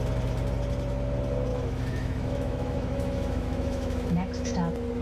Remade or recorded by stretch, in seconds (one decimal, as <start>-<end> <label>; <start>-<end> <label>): 0.0-1.5 recorded; 1.5-4.5 remade; 4.5-5.0 recorded